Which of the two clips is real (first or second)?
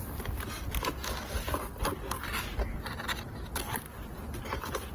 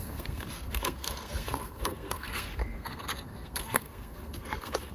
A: first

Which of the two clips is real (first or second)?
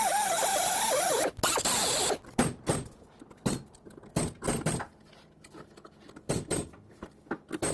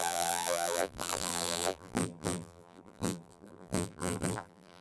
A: first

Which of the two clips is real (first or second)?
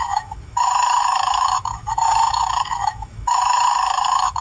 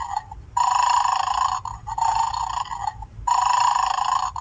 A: second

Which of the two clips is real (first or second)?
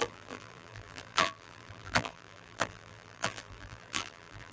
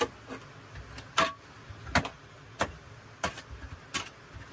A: second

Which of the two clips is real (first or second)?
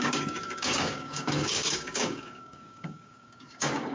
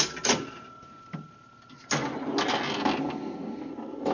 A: second